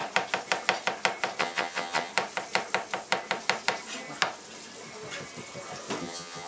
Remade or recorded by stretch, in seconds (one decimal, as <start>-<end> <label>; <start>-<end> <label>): 0.0-1.4 recorded; 1.4-2.1 remade; 2.1-6.0 recorded; 6.0-6.5 remade

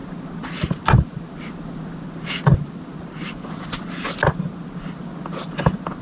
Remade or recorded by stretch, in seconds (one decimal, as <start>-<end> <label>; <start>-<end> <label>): 0.0-6.0 recorded

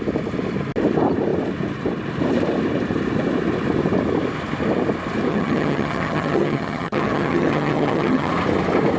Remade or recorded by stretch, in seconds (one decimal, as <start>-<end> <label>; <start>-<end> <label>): 0.0-5.3 recorded; 5.3-8.3 remade; 8.3-9.0 recorded

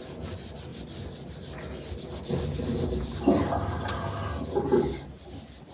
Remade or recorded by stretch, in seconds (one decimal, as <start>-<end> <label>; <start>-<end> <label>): 0.0-5.7 recorded